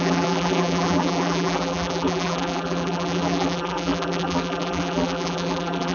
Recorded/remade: remade